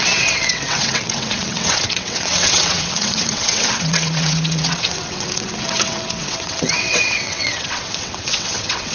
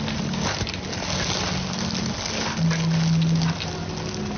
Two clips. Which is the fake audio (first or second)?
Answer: first